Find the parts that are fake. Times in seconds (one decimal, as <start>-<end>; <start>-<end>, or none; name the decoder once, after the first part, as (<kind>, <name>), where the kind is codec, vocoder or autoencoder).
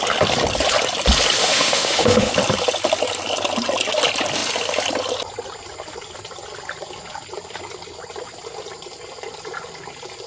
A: 1.4-2.3 (autoencoder, DAC-VAE)